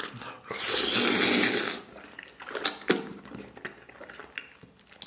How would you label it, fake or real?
real